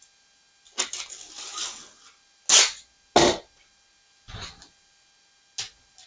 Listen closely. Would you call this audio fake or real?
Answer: real